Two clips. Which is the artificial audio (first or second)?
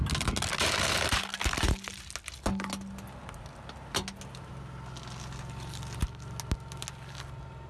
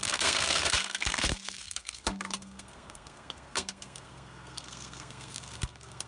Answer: second